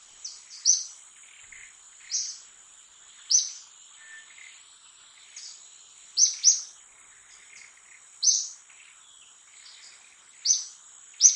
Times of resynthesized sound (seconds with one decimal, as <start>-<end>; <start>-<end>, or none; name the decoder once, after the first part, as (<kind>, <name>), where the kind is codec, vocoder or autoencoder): none